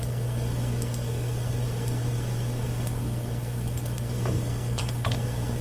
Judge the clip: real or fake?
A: fake